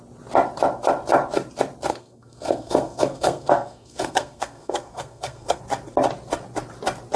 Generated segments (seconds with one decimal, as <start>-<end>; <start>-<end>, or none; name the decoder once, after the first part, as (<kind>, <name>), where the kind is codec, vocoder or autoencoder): 1.9-5.6 (codec, SNAC)